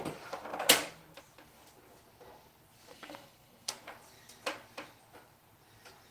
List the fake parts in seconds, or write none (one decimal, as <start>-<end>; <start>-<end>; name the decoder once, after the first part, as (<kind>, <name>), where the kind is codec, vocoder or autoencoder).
2.9-3.7 (codec, SNAC)